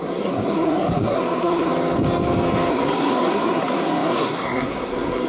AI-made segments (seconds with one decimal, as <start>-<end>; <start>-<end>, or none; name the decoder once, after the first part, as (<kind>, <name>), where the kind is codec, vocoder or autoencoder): 0.0-1.7 (codec, SNAC); 2.7-5.3